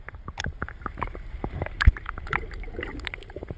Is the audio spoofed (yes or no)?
no